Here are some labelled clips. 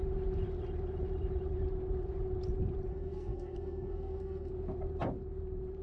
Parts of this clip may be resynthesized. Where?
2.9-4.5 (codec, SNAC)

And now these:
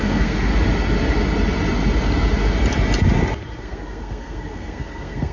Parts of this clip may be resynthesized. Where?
0.0-0.5 (codec, SNAC); 3.6-5.3